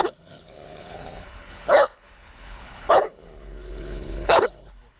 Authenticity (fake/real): fake